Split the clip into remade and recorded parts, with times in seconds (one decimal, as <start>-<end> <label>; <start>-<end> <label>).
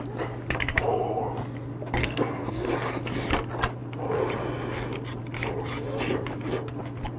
0.0-0.7 recorded; 0.7-1.2 remade; 1.2-2.0 recorded; 2.0-2.7 remade; 2.7-7.2 recorded